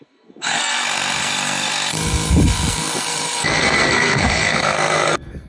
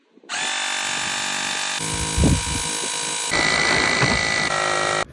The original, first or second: second